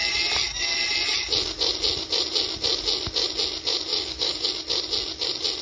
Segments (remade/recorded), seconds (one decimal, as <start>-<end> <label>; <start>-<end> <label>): 0.0-3.9 recorded; 3.9-4.5 remade; 4.5-5.6 recorded